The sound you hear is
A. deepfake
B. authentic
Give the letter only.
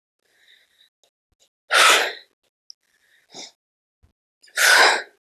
B